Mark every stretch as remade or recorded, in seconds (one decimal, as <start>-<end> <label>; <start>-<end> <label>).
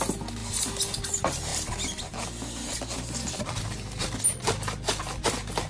0.0-5.7 recorded